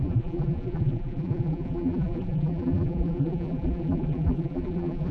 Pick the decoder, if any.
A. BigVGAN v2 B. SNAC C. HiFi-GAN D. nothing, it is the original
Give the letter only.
A